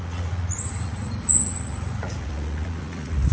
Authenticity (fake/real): fake